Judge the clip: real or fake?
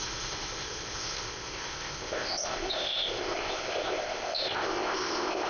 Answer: fake